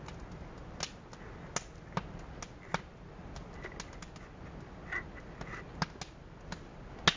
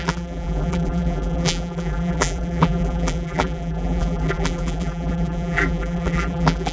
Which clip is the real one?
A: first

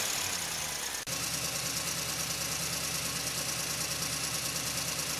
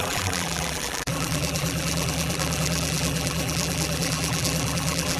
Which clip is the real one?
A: first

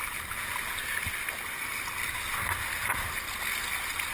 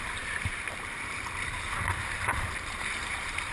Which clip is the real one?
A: first